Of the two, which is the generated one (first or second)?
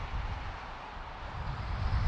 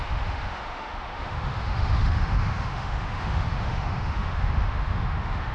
second